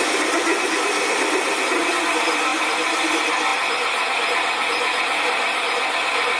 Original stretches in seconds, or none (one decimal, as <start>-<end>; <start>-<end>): none